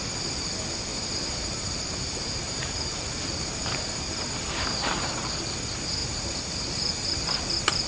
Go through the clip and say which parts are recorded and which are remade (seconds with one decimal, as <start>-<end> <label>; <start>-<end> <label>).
0.0-0.9 recorded; 0.9-5.6 remade; 5.6-6.0 recorded; 6.0-6.7 remade; 6.7-7.9 recorded